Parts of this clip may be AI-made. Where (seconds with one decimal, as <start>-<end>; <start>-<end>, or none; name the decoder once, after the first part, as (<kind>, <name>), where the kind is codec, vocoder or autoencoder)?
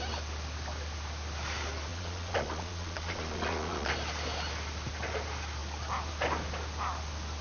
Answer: 1.9-3.9 (vocoder, Vocos)